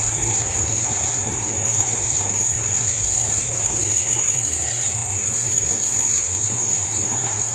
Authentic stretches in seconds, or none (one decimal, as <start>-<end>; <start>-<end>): none